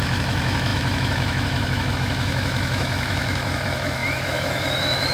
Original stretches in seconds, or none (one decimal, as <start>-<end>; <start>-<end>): none